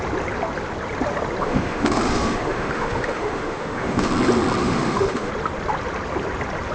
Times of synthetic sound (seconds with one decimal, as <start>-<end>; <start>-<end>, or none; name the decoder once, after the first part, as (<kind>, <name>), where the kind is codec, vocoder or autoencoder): 1.4-4.1 (autoencoder, DAC-VAE); 4.6-5.3